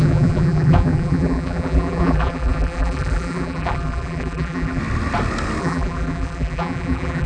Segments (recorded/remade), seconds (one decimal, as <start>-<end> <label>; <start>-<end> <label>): 0.0-4.8 remade; 4.8-5.6 recorded; 5.6-7.3 remade